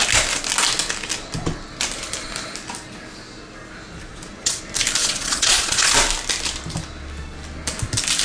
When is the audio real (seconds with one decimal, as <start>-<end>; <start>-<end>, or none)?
0.0-4.1; 4.6-5.0; 5.9-8.2